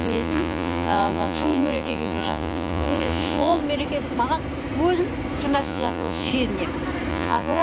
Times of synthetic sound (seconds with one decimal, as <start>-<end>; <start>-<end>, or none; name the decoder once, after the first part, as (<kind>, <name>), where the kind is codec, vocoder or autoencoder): 0.0-3.6 (vocoder, Vocos); 5.6-6.3; 7.1-7.6